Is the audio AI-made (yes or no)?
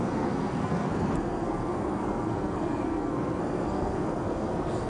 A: yes